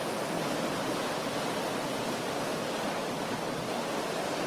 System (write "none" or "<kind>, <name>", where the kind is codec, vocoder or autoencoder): none